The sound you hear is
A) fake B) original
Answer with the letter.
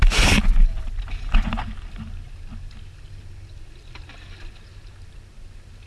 B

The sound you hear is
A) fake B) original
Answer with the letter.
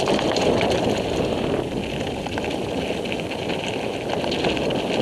B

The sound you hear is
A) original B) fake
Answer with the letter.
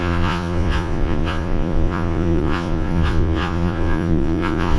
B